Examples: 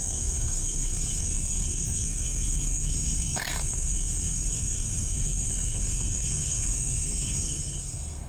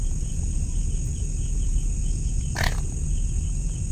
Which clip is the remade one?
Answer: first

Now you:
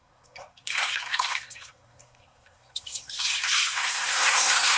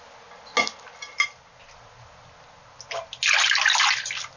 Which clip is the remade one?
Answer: first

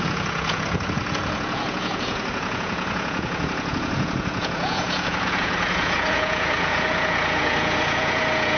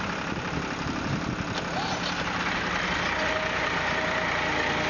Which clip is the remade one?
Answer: first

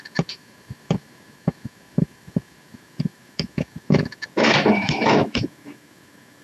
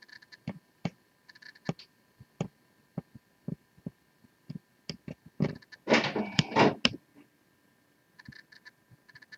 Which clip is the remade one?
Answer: first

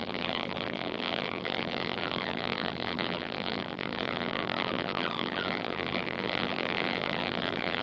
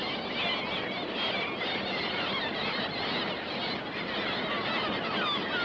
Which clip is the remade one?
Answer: first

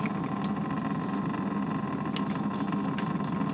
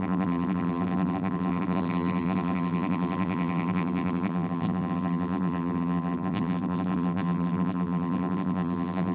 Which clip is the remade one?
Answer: second